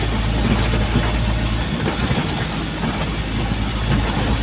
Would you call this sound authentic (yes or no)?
yes